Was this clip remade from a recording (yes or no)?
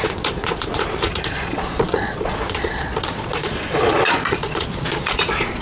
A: yes